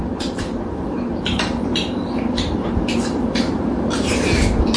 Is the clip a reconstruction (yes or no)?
yes